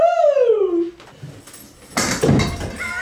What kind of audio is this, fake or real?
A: real